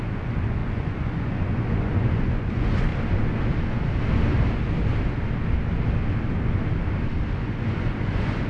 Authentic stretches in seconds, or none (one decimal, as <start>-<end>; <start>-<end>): 2.9-7.3